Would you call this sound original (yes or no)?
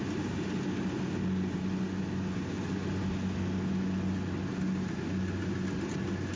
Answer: yes